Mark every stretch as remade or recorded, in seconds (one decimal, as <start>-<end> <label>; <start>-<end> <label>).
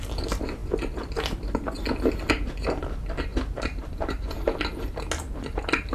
0.0-5.9 recorded